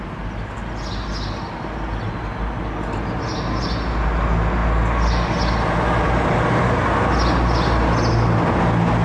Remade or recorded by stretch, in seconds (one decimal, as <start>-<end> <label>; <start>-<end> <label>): 0.0-9.0 recorded